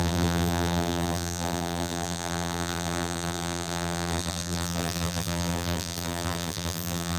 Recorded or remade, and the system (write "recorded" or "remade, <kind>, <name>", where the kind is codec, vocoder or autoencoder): remade, vocoder, BigVGAN v2